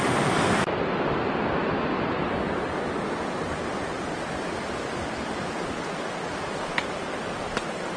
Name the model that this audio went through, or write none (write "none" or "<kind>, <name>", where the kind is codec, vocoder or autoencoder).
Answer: none